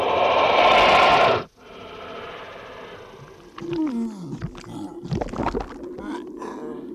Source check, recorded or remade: recorded